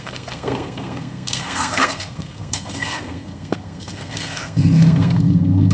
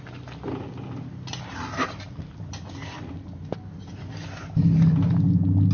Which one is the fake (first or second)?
first